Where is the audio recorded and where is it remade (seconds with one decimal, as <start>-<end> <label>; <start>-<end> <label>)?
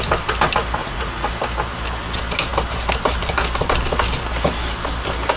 0.0-0.8 recorded; 0.8-1.3 remade; 1.3-5.4 recorded